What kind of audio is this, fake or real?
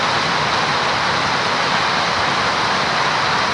real